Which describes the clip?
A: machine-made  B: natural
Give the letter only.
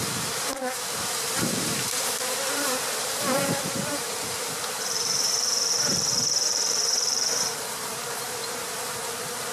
A